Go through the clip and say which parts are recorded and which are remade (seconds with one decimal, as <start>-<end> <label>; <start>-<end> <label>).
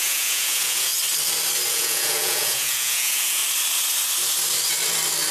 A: 0.0-0.9 remade; 0.9-1.7 recorded; 1.7-3.4 remade; 3.4-5.3 recorded